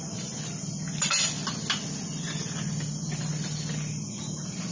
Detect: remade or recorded recorded